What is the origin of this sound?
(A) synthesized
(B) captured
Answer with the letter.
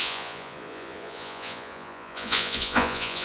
A